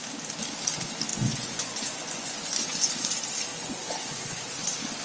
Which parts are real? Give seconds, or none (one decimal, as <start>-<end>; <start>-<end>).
0.0-1.1; 2.9-3.5; 4.5-5.0